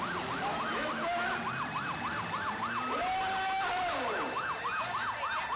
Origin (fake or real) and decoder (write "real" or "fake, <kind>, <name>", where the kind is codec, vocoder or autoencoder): real